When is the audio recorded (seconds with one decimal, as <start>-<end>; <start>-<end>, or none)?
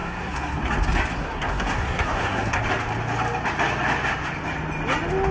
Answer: 0.6-1.1; 2.6-5.3